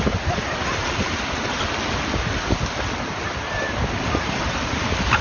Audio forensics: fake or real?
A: real